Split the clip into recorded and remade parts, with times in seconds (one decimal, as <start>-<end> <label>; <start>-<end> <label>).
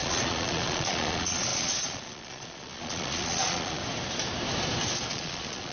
0.0-3.8 remade; 3.8-5.1 recorded; 5.1-5.7 remade